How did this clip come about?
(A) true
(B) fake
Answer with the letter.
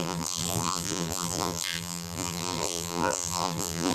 B